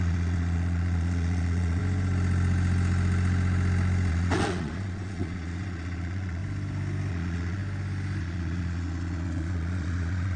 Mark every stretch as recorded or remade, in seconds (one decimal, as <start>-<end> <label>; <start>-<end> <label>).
0.0-1.8 remade; 1.8-4.1 recorded; 4.1-6.4 remade; 6.4-7.1 recorded; 7.1-7.6 remade; 7.6-8.2 recorded; 8.2-10.4 remade